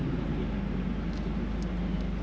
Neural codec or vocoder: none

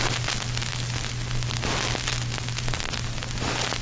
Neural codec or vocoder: none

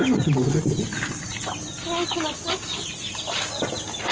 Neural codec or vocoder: none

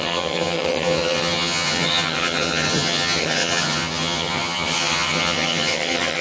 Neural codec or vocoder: vocoder, HiFi-GAN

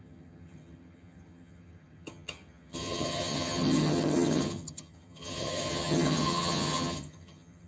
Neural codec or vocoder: vocoder, HiFi-GAN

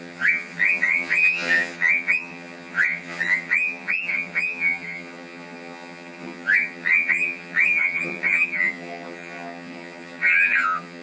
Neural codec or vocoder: vocoder, HiFi-GAN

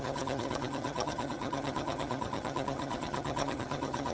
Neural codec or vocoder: vocoder, HiFi-GAN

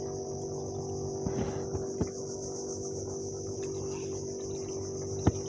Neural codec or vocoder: none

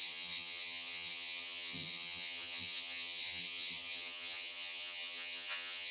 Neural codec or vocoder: vocoder, HiFi-GAN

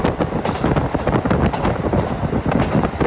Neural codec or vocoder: none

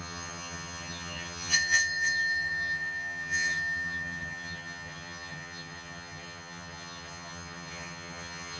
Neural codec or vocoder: vocoder, HiFi-GAN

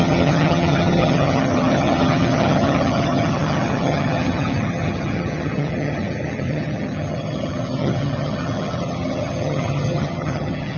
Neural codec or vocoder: vocoder, HiFi-GAN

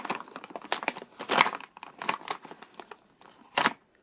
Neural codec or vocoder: none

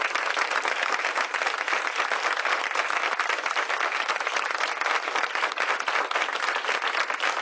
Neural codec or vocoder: none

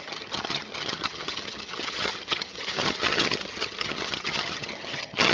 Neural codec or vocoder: vocoder, HiFi-GAN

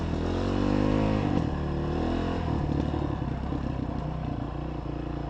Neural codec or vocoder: none